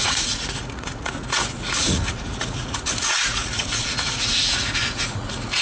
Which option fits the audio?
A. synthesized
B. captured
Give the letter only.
A